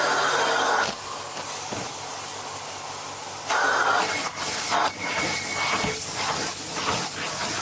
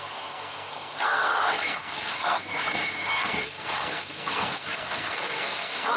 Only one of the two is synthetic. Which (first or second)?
second